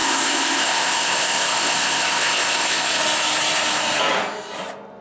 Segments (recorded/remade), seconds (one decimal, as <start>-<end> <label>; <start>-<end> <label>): 0.0-3.0 remade; 3.0-5.0 recorded